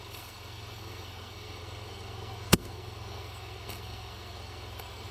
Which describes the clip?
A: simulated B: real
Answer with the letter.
A